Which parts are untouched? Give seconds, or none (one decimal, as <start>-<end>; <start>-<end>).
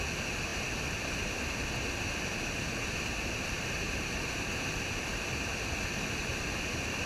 0.0-7.1